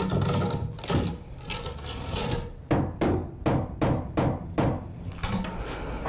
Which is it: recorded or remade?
recorded